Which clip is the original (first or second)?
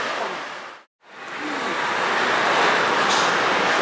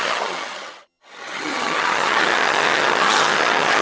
first